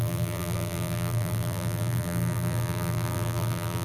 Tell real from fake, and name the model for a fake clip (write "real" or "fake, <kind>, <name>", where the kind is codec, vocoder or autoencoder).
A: fake, vocoder, BigVGAN v2